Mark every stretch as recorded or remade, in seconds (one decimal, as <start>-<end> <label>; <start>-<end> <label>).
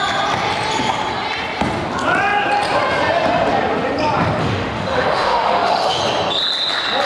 0.0-4.4 recorded; 4.4-6.0 remade; 6.0-7.1 recorded